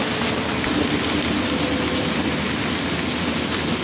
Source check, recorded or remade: recorded